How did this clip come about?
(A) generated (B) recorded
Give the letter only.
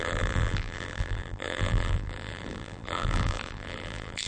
A